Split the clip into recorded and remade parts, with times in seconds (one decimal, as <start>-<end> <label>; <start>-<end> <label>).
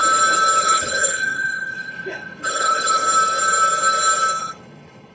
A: 0.0-0.6 recorded; 0.6-3.0 remade; 3.0-4.4 recorded; 4.4-5.1 remade